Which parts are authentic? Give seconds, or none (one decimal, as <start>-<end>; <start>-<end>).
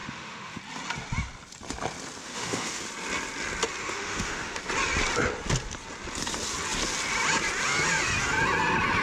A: 0.6-2.2; 2.8-3.8; 4.6-9.0